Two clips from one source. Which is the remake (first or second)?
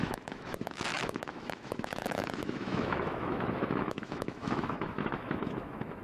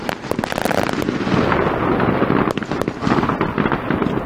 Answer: first